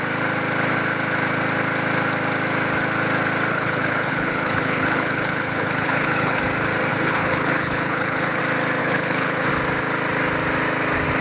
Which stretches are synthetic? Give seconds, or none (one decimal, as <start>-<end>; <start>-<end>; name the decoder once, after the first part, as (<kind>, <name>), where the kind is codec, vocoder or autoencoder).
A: 3.5-6.4 (codec, HILCodec); 6.9-8.4; 8.8-9.5